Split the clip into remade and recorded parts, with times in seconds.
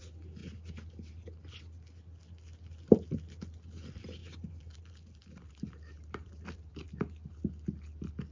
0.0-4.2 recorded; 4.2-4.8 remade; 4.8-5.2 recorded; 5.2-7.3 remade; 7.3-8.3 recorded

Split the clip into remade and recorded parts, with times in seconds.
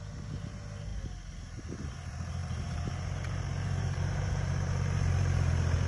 0.0-2.4 recorded; 2.4-5.5 remade; 5.5-5.9 recorded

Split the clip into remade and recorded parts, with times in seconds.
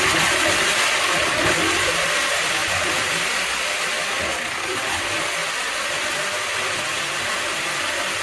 0.0-2.6 recorded; 2.6-3.5 remade; 3.5-8.2 recorded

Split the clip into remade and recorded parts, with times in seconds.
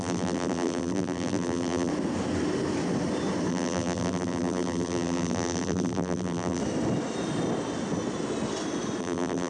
0.0-1.9 remade; 1.9-3.5 recorded; 3.5-6.6 remade; 6.6-9.0 recorded; 9.0-9.5 remade